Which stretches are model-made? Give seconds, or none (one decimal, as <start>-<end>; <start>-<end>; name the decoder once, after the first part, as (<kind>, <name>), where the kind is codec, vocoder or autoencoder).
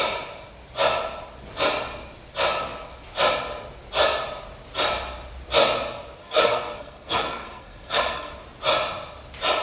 6.2-8.4 (codec, SNAC)